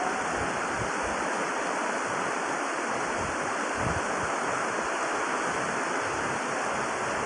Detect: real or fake real